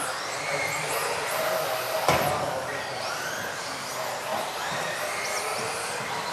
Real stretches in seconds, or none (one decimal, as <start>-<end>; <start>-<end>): 0.0-6.3